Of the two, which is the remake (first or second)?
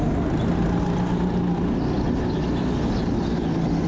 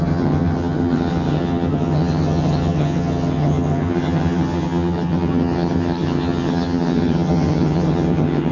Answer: second